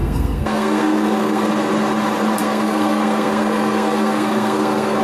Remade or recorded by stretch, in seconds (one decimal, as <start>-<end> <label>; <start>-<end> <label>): 0.0-1.5 remade; 1.5-2.4 recorded; 2.4-5.0 remade